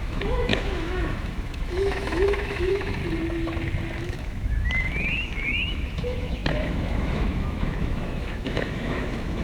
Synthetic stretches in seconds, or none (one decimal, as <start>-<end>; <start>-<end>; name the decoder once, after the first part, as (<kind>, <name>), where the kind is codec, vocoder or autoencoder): 0.0-3.0 (autoencoder, DAC-VAE); 4.0-9.4